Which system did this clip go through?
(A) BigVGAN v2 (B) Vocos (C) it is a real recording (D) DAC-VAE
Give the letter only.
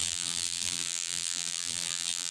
A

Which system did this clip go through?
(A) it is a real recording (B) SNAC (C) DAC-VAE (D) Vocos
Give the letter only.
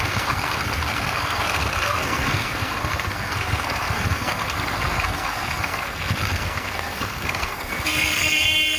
B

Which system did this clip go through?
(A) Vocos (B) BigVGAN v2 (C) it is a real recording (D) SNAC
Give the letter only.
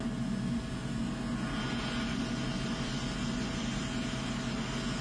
C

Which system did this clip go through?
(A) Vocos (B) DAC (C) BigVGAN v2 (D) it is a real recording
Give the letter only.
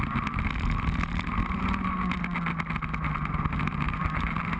D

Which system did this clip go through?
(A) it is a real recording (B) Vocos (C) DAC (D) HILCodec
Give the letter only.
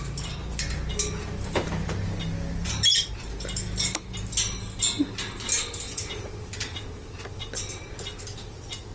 A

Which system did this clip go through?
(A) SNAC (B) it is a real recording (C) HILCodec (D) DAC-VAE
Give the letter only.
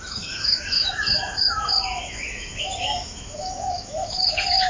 D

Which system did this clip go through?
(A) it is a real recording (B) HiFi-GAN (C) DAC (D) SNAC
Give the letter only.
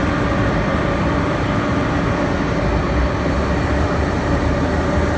A